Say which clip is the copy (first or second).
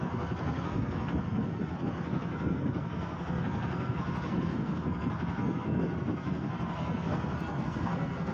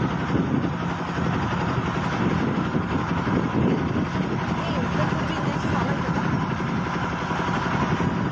first